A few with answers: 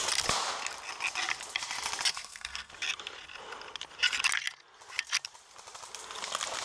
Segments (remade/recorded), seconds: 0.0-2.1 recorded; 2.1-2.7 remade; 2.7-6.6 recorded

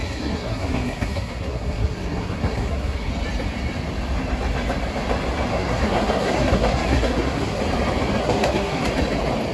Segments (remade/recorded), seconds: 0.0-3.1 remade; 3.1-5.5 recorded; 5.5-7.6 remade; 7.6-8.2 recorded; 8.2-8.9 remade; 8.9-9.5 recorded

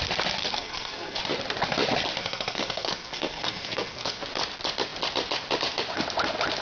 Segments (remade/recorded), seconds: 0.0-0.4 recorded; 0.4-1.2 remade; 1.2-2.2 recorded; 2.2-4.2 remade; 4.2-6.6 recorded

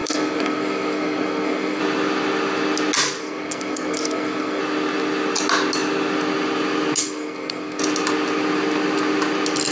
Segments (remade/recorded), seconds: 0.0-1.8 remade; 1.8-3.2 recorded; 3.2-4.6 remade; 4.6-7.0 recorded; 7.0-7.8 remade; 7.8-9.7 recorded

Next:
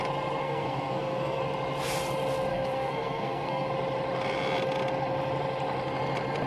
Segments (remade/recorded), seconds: 0.0-0.4 recorded; 0.4-1.4 remade; 1.4-2.5 recorded; 2.5-3.7 remade; 3.7-6.5 recorded

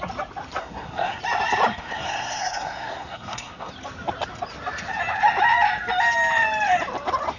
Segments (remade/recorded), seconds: 0.0-0.6 recorded; 0.6-1.2 remade; 1.2-1.7 recorded; 1.7-3.7 remade; 3.7-7.4 recorded

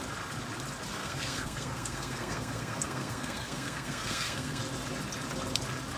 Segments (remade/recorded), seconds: 0.0-1.0 recorded; 1.0-4.6 remade; 4.6-6.0 recorded

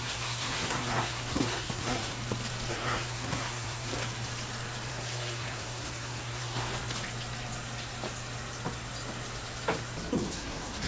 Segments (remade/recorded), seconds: 0.0-2.2 remade; 2.2-2.7 recorded; 2.7-3.9 remade; 3.9-4.9 recorded; 4.9-6.7 remade; 6.7-10.1 recorded; 10.1-10.9 remade